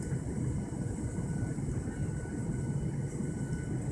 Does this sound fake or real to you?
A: real